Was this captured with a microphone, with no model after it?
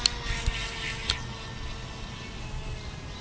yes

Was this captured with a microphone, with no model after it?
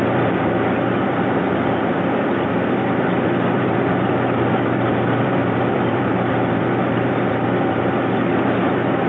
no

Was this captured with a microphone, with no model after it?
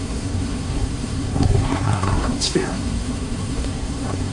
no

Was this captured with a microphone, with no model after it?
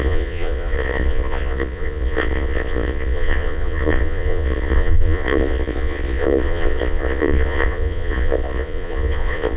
no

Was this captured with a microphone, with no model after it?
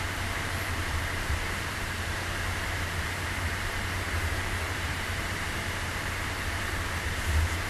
no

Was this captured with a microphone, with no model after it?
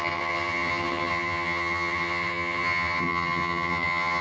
no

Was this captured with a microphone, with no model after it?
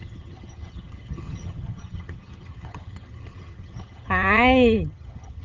no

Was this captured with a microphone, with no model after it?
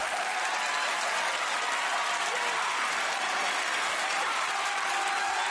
yes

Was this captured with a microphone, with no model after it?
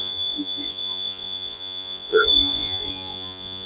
no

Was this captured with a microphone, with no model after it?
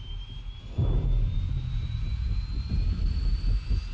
no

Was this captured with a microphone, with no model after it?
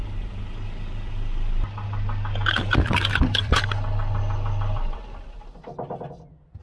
yes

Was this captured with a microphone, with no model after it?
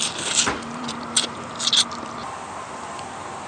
no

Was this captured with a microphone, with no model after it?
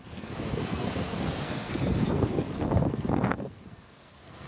no